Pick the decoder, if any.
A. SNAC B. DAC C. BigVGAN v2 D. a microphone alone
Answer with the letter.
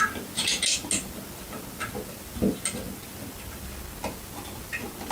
D